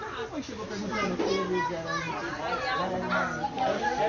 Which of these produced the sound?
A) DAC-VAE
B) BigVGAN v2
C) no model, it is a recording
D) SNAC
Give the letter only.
C